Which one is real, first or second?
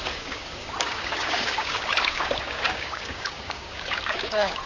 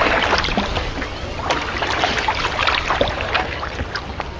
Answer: second